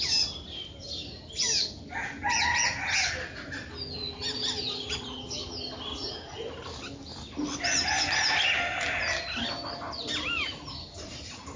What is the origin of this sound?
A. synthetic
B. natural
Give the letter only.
B